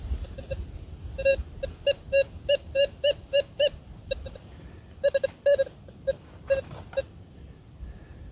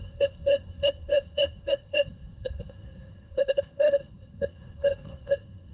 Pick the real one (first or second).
first